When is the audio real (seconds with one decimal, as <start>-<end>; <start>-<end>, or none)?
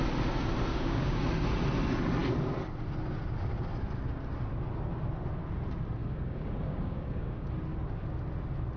0.0-0.7; 1.2-6.0; 7.5-8.8